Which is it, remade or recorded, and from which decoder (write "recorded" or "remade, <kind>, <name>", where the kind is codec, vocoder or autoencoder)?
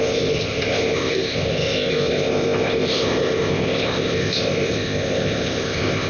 remade, codec, ZipCodec